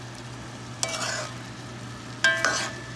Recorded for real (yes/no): yes